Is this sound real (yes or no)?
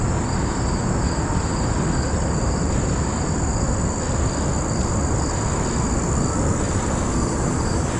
yes